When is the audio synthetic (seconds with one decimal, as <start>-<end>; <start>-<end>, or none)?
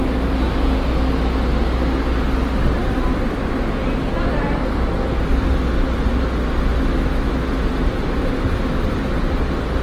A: none